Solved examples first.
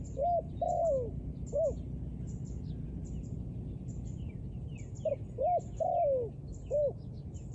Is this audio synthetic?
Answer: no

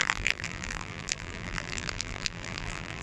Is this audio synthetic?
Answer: yes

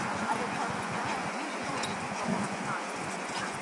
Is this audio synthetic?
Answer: yes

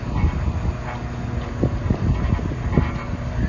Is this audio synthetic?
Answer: no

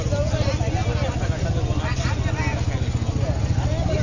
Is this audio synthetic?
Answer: no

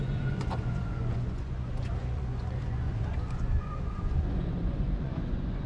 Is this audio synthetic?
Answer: yes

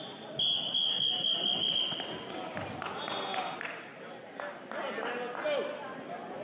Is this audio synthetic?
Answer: no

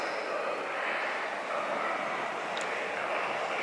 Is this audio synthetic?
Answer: no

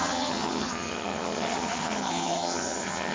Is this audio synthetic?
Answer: yes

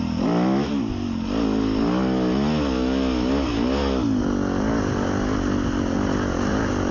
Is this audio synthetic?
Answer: no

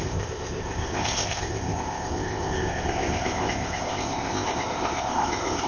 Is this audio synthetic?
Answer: yes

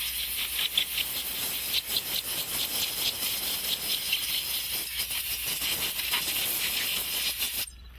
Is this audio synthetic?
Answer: no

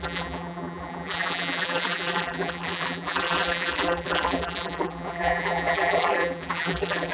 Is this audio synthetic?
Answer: yes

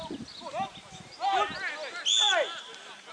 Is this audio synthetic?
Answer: no